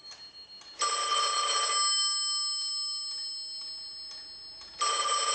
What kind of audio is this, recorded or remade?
recorded